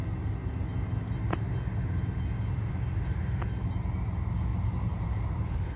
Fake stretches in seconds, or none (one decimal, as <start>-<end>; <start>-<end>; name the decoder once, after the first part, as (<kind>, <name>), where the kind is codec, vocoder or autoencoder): 4.5-5.8 (vocoder, BigVGAN v2)